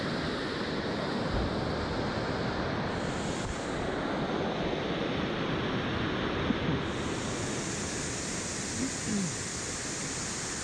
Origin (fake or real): real